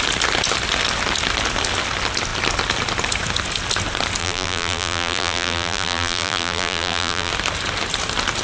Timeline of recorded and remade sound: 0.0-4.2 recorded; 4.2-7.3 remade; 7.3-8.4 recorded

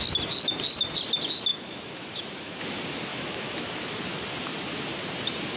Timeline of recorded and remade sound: 0.0-1.5 recorded; 1.5-2.6 remade; 2.6-3.1 recorded; 3.1-3.7 remade; 3.7-5.6 recorded

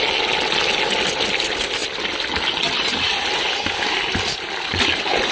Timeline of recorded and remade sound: 0.0-5.3 recorded

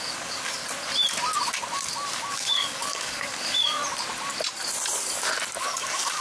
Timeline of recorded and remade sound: 0.0-0.6 remade; 0.6-2.3 recorded; 2.3-3.8 remade; 3.8-5.6 recorded; 5.6-6.2 remade

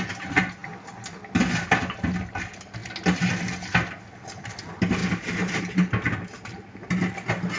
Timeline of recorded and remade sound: 0.0-5.0 recorded; 5.0-5.6 remade; 5.6-7.6 recorded

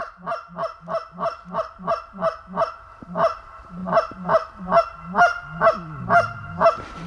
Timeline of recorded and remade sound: 0.0-7.1 recorded

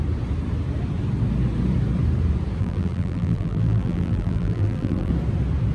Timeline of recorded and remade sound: 0.0-2.6 recorded; 2.6-5.1 remade; 5.1-5.7 recorded